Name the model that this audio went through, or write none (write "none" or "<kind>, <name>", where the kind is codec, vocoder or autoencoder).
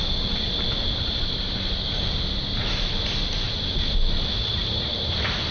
none